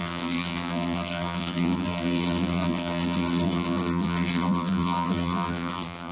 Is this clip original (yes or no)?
no